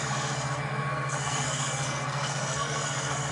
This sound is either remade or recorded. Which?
remade